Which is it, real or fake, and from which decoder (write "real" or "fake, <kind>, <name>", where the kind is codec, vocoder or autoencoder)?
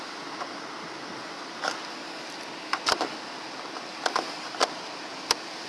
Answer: real